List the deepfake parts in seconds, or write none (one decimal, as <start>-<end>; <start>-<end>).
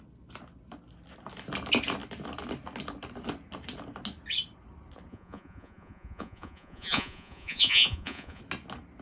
5.1-8.4